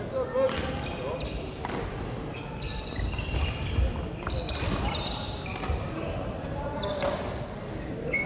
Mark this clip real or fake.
real